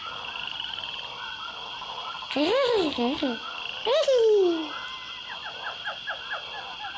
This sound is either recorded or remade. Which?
recorded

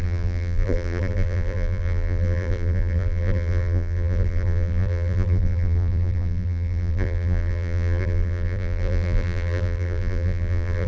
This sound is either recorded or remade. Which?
remade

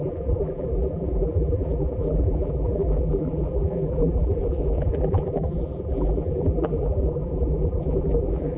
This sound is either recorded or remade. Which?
remade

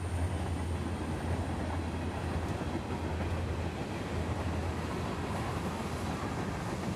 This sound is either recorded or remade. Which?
recorded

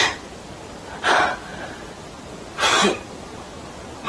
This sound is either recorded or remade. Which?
recorded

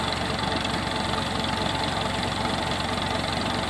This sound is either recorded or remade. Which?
recorded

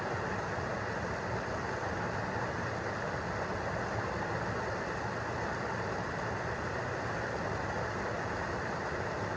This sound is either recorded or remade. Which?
recorded